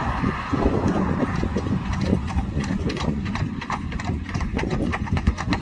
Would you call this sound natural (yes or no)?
no